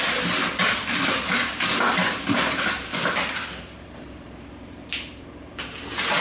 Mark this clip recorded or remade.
recorded